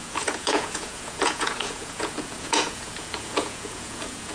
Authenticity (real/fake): fake